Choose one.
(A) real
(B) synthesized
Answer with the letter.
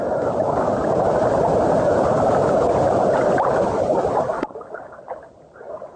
A